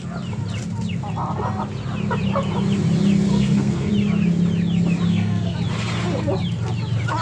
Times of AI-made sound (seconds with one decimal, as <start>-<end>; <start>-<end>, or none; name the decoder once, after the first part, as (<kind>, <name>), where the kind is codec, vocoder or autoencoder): 3.3-3.9 (codec, SNAC); 5.1-5.6

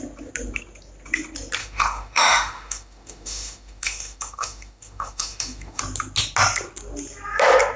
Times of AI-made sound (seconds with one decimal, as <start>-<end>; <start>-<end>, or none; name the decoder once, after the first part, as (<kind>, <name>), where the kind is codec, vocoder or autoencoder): 1.6-5.8 (autoencoder, DAC-VAE)

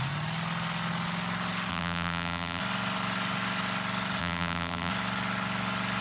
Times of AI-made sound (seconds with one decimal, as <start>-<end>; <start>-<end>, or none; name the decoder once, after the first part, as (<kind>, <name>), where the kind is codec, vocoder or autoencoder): 1.7-2.6 (vocoder, BigVGAN v2); 4.2-4.9

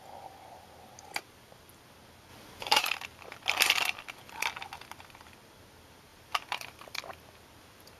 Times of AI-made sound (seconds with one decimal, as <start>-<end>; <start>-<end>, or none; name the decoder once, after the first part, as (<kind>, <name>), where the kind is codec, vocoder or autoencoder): 2.3-2.8 (vocoder, BigVGAN v2); 6.1-7.0

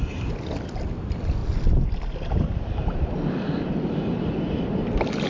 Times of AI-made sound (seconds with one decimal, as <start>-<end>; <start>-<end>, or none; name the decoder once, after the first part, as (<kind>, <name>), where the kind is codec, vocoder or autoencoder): none

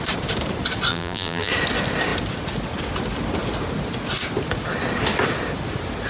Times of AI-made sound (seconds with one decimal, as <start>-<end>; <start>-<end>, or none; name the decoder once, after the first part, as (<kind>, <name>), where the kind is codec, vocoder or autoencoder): 0.9-1.5 (vocoder, BigVGAN v2)

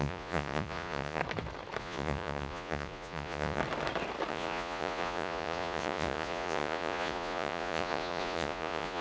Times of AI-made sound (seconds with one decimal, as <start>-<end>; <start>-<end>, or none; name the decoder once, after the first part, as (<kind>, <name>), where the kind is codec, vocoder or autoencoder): 0.0-1.2 (vocoder, Vocos); 1.8-3.6; 4.3-9.0